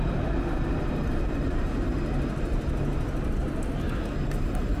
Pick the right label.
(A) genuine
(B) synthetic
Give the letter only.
A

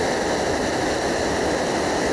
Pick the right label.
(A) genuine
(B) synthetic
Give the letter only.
A